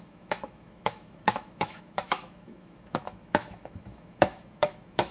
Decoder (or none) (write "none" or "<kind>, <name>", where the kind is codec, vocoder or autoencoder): autoencoder, DAC-VAE